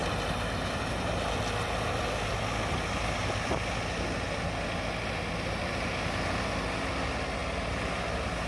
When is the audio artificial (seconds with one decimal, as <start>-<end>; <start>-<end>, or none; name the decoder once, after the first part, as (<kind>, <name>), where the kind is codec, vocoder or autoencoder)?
none